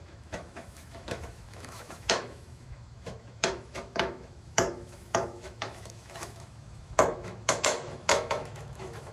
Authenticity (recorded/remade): remade